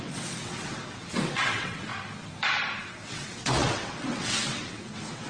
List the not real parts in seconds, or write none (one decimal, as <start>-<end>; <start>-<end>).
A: 0.0-1.9; 2.8-5.3

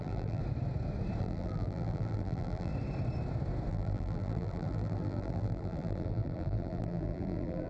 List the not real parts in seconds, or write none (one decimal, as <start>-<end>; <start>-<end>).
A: 0.0-0.4; 1.2-2.7; 3.7-7.7

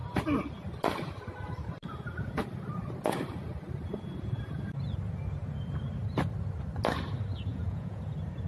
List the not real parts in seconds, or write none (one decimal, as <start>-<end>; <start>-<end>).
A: 7.5-8.0